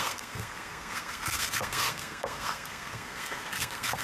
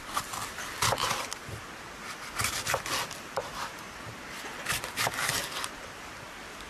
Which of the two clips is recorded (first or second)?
second